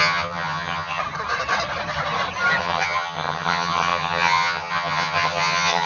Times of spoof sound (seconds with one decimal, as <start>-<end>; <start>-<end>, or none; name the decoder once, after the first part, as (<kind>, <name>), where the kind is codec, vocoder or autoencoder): 0.0-1.0 (vocoder, HiFi-GAN); 2.6-5.9